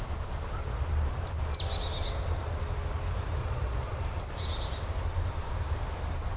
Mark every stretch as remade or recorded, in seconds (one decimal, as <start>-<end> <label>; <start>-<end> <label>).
0.0-3.4 recorded; 3.4-4.0 remade; 4.0-6.4 recorded